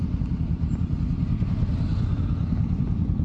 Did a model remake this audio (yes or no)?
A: no